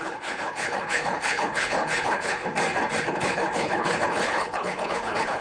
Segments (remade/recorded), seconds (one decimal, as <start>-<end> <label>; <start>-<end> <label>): 0.0-2.4 remade; 2.4-3.0 recorded; 3.0-5.4 remade